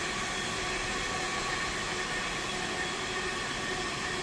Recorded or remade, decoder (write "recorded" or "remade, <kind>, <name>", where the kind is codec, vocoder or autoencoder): recorded